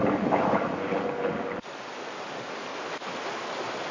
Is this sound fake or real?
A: real